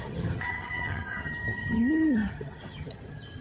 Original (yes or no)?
no